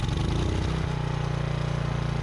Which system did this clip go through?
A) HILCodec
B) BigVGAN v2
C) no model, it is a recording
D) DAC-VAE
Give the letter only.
C